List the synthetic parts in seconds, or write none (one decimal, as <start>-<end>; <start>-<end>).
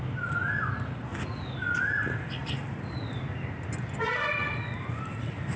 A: none